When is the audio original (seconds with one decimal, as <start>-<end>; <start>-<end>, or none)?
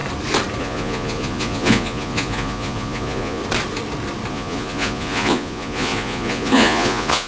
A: 0.0-0.6; 3.4-4.3